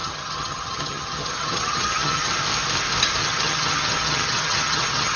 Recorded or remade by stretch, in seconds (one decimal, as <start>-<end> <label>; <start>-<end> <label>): 0.0-2.3 remade; 2.3-3.2 recorded; 3.2-5.2 remade

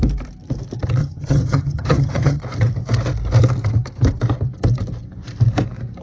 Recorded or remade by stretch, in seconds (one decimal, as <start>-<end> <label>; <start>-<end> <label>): 0.0-1.0 recorded; 1.0-2.4 remade; 2.4-6.0 recorded

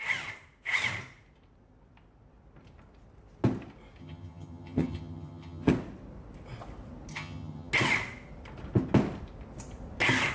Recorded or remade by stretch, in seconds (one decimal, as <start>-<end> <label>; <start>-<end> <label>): 0.0-4.0 recorded; 4.0-5.7 remade; 5.7-7.1 recorded; 7.1-7.7 remade; 7.7-10.3 recorded